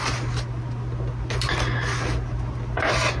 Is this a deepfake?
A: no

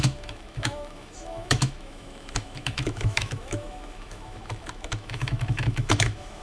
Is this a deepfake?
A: yes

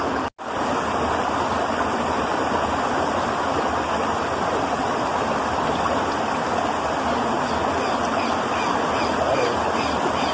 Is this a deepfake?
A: no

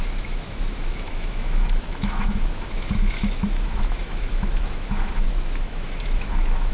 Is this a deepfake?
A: yes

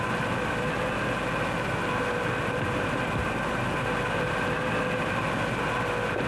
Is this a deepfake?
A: no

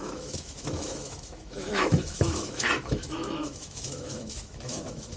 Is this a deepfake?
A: yes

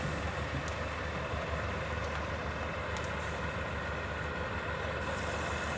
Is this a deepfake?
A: no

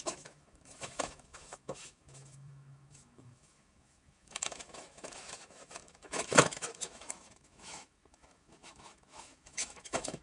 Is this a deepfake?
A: yes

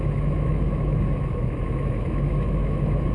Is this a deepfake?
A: yes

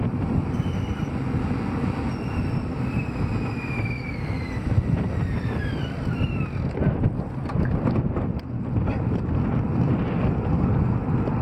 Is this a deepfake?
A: no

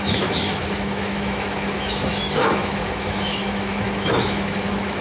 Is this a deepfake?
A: yes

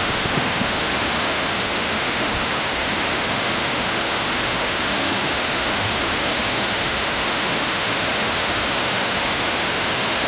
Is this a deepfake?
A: yes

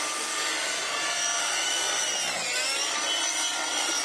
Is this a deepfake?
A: no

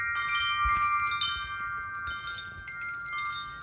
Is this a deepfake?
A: no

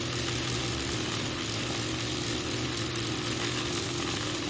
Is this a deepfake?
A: no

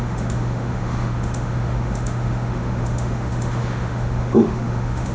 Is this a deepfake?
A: yes